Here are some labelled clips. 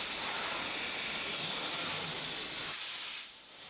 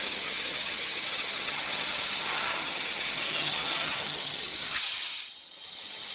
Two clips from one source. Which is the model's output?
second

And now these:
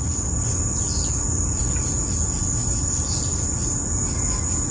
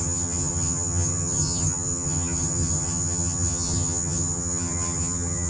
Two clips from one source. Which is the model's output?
second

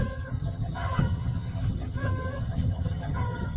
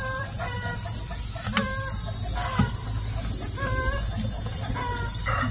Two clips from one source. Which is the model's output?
first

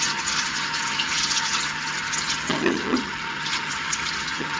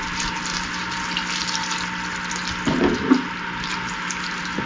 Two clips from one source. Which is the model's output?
first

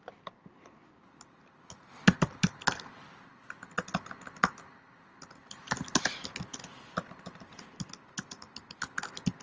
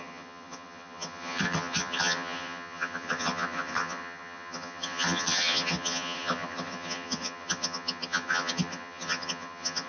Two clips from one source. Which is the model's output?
second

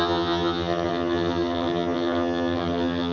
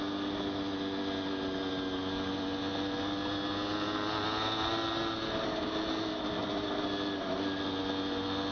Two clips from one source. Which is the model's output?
first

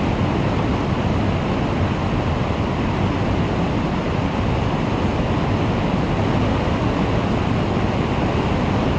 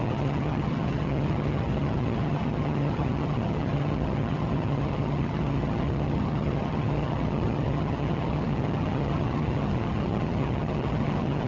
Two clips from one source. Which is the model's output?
second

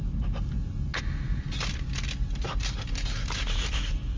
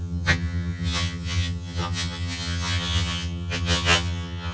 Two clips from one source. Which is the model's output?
second